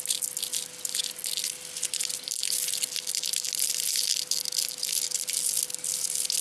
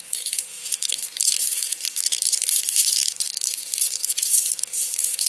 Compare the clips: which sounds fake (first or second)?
second